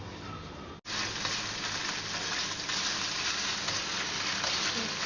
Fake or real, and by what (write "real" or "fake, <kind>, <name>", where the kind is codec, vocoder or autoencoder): real